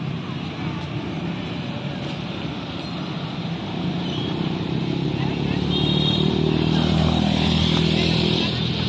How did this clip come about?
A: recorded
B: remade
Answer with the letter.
A